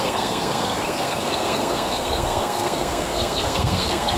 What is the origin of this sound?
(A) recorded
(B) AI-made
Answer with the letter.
B